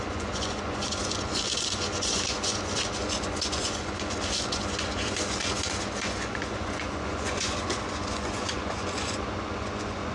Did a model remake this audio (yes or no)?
yes